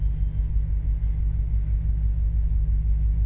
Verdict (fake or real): real